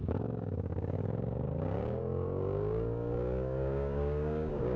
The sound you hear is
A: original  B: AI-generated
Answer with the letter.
B